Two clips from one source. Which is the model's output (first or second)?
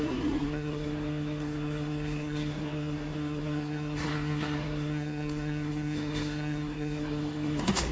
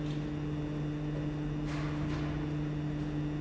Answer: first